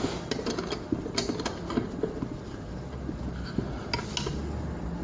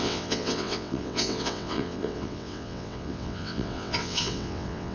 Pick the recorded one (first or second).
first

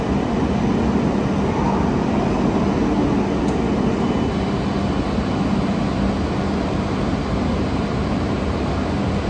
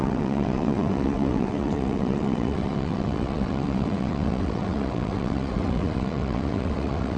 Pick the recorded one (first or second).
first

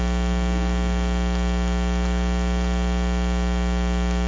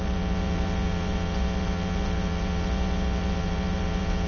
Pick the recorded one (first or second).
first